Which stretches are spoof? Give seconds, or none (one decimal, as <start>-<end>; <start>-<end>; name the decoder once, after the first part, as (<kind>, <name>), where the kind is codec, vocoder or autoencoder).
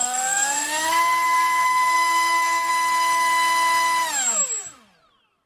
0.0-2.7 (codec, SNAC)